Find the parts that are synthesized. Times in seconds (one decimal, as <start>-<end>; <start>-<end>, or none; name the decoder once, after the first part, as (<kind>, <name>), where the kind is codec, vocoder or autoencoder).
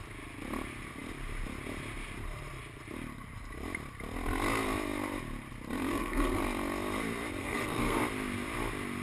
5.9-6.4 (codec, SNAC); 7.4-8.0